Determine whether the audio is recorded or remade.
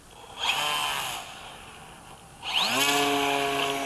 recorded